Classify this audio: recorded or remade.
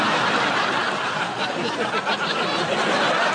remade